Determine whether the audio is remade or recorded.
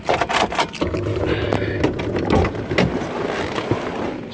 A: recorded